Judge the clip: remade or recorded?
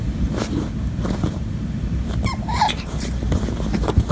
remade